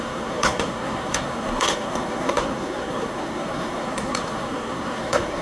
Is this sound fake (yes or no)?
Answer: yes